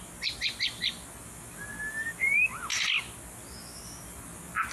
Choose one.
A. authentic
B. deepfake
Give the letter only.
A